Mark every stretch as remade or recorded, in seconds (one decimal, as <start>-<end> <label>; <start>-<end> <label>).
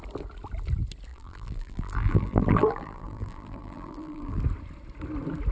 0.0-1.1 recorded; 1.1-4.4 remade; 4.4-5.5 recorded